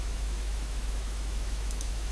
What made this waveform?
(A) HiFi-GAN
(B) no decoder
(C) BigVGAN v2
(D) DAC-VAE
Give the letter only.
D